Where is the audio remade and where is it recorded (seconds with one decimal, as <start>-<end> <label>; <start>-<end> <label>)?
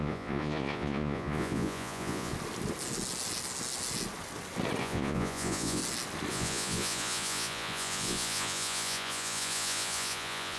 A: 0.0-2.3 remade; 2.3-4.8 recorded; 4.8-5.8 remade; 5.8-6.3 recorded; 6.3-10.6 remade